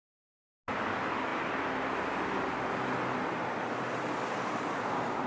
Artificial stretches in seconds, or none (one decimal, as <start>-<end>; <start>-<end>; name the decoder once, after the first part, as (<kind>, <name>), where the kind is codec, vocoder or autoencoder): none